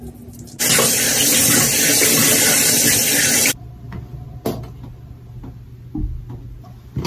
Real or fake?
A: real